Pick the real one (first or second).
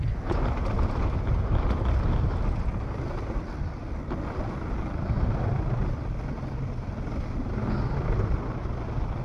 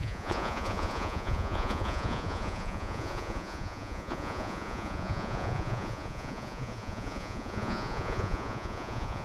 first